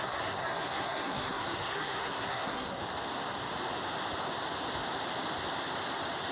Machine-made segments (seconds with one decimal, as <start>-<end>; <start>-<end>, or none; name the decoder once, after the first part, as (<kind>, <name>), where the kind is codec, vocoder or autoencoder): 0.0-2.8 (codec, SNAC)